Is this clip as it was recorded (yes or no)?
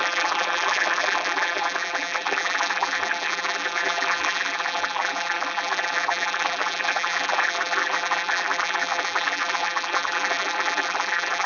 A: no